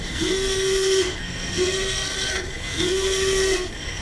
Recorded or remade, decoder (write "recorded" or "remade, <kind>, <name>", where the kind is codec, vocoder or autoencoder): remade, codec, SNAC